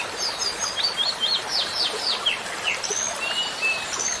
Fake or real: real